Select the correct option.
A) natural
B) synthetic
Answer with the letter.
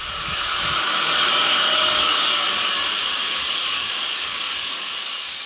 B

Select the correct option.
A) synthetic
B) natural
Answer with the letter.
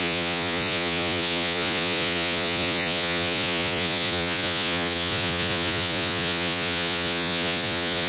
A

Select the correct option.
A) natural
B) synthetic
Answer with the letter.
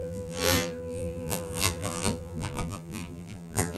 B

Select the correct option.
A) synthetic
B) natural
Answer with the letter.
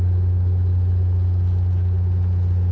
B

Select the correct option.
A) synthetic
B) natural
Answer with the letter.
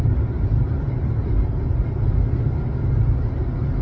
B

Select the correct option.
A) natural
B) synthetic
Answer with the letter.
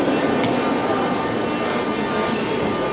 A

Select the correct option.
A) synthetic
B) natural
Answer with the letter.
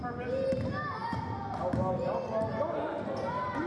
B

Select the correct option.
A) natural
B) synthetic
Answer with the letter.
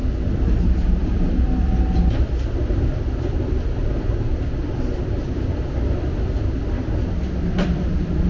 B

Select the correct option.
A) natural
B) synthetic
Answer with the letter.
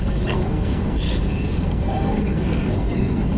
B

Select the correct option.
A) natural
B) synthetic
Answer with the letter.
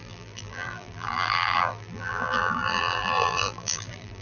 B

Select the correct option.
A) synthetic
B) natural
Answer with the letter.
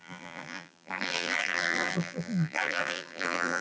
A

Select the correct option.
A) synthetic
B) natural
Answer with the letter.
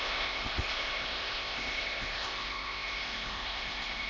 A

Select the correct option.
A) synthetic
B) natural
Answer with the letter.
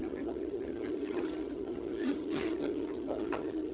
A